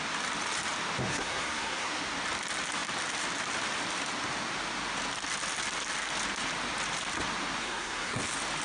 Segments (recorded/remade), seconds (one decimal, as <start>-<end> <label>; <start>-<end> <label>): 0.0-1.1 recorded; 1.1-2.0 remade; 2.0-7.6 recorded; 7.6-8.2 remade; 8.2-8.6 recorded